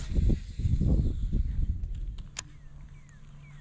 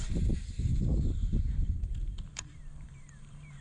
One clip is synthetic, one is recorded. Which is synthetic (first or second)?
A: second